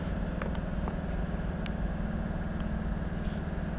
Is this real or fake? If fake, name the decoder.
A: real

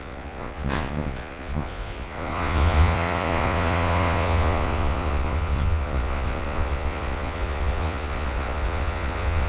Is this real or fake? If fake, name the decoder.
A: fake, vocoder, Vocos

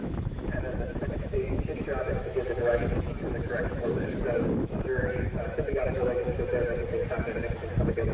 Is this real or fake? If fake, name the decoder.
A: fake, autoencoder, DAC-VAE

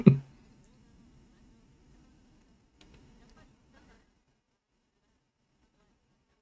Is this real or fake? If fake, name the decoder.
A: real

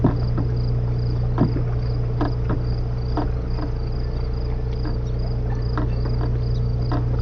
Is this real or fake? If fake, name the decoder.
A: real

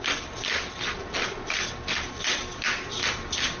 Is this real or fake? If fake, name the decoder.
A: real